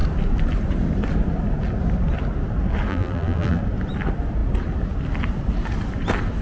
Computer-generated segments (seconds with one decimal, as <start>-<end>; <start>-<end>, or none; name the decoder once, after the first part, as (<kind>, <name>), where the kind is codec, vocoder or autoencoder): 2.9-3.6 (vocoder, BigVGAN v2)

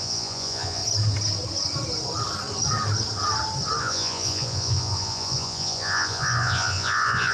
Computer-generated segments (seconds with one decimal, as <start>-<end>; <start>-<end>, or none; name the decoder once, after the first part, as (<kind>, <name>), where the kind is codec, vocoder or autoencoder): 0.0-0.8 (vocoder, Vocos); 3.8-7.3

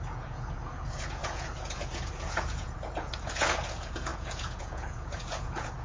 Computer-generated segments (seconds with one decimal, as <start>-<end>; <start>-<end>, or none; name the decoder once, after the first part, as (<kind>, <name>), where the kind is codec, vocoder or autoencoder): 0.0-5.8 (vocoder, Vocos)

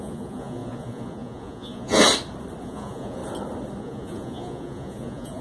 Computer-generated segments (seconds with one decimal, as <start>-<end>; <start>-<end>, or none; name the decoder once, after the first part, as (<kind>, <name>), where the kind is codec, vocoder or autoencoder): 0.0-2.0 (vocoder, Vocos); 2.6-3.2; 3.8-5.4

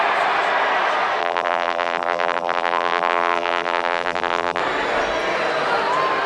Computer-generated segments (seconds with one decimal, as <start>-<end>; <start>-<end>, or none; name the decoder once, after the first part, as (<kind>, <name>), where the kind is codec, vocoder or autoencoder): 1.2-4.6 (vocoder, BigVGAN v2)

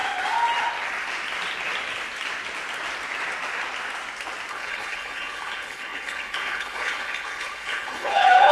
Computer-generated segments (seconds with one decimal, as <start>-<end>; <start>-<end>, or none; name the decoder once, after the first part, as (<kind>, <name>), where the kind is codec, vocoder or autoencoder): 4.5-8.5 (codec, HILCodec)

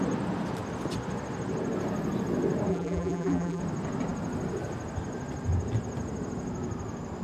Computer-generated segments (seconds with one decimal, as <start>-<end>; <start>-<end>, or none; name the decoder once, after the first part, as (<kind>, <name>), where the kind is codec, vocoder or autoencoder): 2.7-3.6 (vocoder, BigVGAN v2)